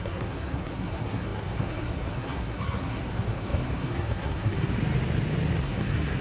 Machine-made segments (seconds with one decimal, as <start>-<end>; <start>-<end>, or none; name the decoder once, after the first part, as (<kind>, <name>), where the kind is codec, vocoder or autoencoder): 0.0-4.8 (codec, SNAC); 5.6-6.2

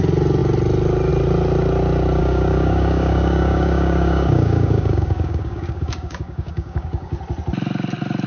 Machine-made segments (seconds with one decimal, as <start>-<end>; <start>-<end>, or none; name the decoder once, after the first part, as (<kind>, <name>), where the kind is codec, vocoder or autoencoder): 2.2-7.2 (codec, DAC)